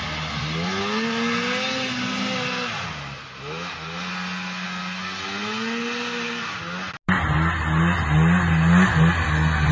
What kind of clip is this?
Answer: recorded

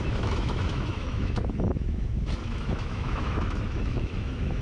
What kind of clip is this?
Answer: remade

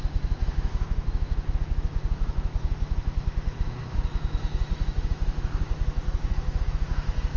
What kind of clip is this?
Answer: remade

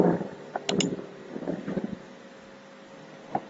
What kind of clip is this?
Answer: recorded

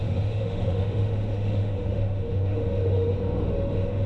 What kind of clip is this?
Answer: remade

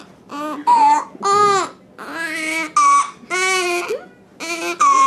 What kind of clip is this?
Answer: recorded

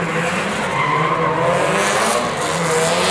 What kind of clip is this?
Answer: recorded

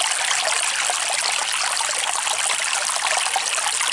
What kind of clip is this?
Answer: recorded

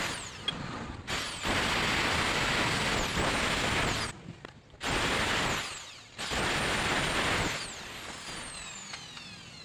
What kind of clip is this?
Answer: recorded